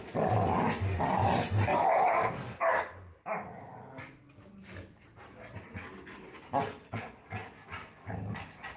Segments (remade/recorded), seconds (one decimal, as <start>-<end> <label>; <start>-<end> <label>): 0.0-8.8 recorded